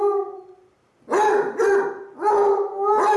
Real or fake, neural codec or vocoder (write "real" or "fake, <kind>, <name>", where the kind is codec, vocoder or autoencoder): real